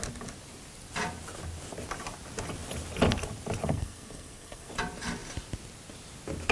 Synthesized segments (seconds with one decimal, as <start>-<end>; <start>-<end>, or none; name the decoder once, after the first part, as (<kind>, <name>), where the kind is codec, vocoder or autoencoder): 3.6-4.7 (codec, SNAC)